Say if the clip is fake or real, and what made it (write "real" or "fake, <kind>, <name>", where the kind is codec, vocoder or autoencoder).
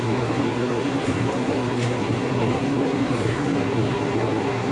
fake, codec, SNAC